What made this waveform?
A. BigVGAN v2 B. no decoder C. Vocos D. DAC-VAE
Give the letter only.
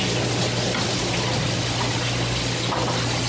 B